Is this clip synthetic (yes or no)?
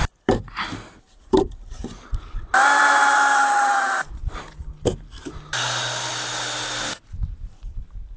no